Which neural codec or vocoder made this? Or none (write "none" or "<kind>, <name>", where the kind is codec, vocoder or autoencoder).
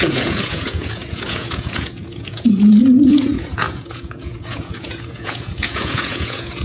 vocoder, Vocos